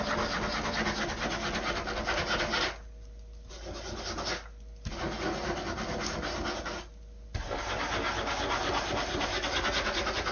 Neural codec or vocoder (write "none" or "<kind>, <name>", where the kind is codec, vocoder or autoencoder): none